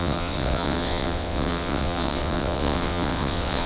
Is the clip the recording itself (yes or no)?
no